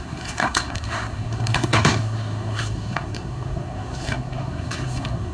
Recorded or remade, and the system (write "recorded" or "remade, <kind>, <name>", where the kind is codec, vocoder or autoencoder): remade, codec, SNAC